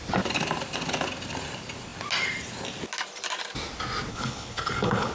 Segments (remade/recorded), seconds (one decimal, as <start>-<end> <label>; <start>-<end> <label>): 0.0-4.1 recorded; 4.1-5.1 remade